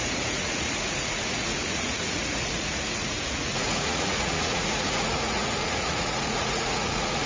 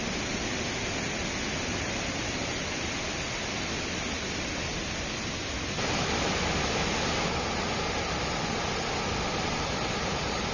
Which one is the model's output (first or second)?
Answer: first